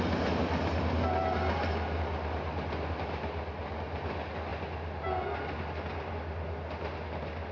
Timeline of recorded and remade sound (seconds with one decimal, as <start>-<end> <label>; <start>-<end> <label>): 0.0-7.5 recorded